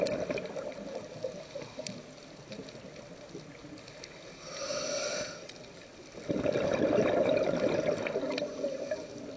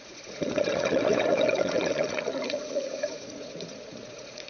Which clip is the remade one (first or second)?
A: second